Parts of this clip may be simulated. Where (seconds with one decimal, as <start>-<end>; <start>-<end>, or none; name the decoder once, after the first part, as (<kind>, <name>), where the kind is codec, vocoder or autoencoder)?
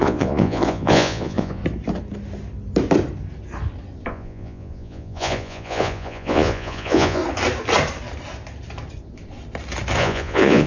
0.0-1.6 (vocoder, Vocos); 4.1-7.2; 10.0-10.7